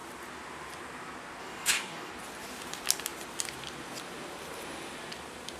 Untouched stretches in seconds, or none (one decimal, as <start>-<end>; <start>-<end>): 0.0-1.4; 2.1-5.6